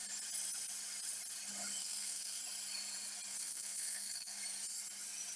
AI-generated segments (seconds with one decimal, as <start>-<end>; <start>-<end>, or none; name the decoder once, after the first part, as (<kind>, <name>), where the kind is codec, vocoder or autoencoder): 1.8-2.4 (codec, SNAC); 3.3-4.4

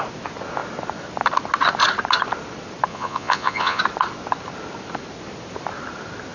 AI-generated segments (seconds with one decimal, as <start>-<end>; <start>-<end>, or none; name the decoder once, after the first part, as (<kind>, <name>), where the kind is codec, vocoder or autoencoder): 2.9-3.8 (vocoder, Vocos)

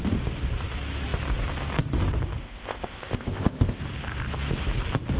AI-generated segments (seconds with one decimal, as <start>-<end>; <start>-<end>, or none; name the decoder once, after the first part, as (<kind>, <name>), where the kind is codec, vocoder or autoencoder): 2.4-3.8 (codec, ZipCodec)